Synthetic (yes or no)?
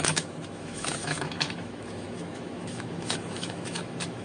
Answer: yes